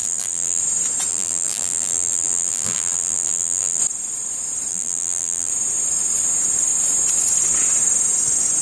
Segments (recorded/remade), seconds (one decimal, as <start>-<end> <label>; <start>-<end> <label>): 0.0-0.6 remade; 0.6-1.1 recorded; 1.1-3.8 remade; 3.8-4.7 recorded; 4.7-5.5 remade; 5.5-8.6 recorded